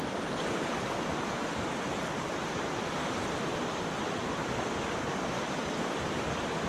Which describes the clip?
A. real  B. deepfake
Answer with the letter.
B